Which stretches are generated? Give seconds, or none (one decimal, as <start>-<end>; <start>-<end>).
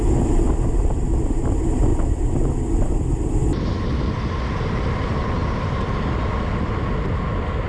none